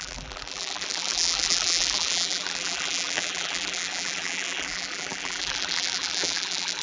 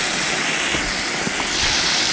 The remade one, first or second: first